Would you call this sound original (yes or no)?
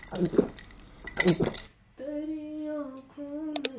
yes